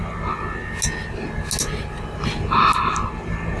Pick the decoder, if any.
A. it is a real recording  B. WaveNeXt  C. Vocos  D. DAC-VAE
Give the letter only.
A